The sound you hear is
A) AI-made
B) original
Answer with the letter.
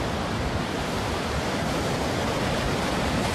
A